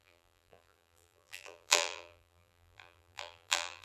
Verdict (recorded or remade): remade